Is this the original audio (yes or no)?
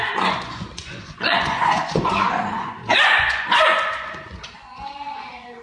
no